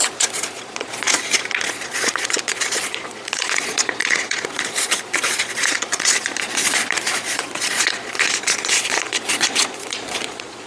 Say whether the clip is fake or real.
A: fake